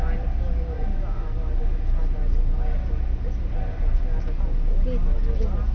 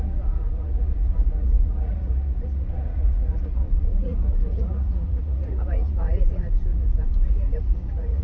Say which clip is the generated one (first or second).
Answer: second